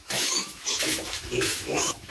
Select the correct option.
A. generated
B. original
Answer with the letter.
A